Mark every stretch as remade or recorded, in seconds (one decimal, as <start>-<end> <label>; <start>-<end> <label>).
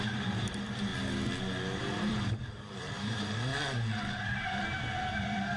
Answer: 0.0-0.9 remade; 0.9-1.8 recorded; 1.8-3.5 remade; 3.5-4.2 recorded; 4.2-5.6 remade